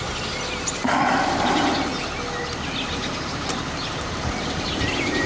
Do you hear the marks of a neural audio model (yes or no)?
no